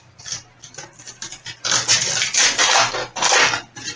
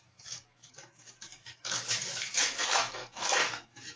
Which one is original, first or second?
first